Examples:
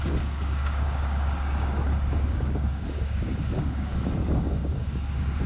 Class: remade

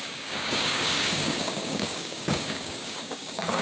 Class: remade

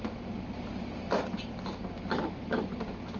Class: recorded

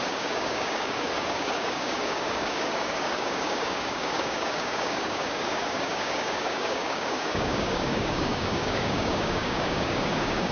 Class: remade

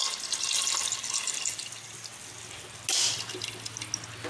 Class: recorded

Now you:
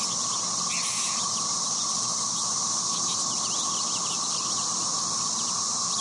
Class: recorded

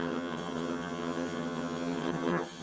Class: remade